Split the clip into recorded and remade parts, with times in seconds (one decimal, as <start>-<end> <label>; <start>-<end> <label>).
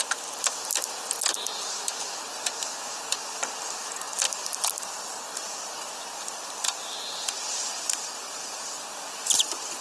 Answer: 0.0-9.8 recorded